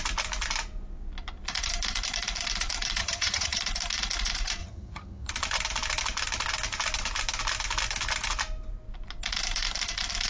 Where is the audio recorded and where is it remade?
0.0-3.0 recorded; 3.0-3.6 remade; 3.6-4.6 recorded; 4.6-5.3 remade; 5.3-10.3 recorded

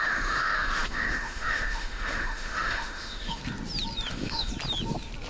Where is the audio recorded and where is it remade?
0.0-3.4 remade; 3.4-4.1 recorded; 4.1-4.5 remade; 4.5-5.3 recorded

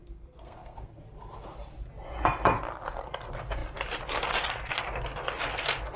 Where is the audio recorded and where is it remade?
0.0-1.0 remade; 1.0-6.0 recorded

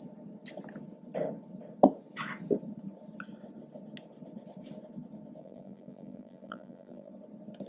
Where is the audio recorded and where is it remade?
0.0-5.4 recorded; 5.4-7.1 remade; 7.1-7.7 recorded

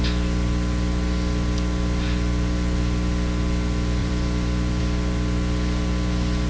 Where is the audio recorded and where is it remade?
0.0-4.0 recorded; 4.0-4.8 remade; 4.8-6.5 recorded

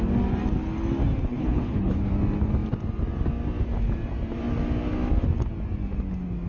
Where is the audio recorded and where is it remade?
0.0-1.3 recorded; 1.3-2.1 remade; 2.1-6.5 recorded

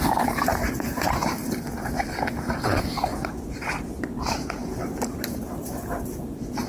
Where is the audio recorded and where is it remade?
0.0-1.4 remade; 1.4-2.3 recorded; 2.3-3.1 remade; 3.1-6.7 recorded

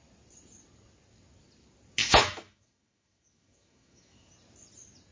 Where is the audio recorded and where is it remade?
0.0-2.0 recorded; 2.0-4.3 remade; 4.3-5.1 recorded